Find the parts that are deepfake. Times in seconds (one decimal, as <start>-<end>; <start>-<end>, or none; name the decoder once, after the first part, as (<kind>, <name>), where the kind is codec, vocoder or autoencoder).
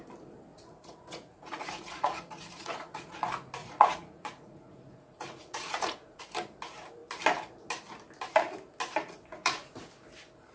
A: 0.5-3.2 (vocoder, Vocos); 3.6-6.2; 9.3-9.8